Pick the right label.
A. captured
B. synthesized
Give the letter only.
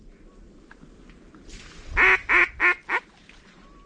A